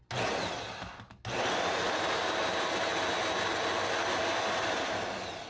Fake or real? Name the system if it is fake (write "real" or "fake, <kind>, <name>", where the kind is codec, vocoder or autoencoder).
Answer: real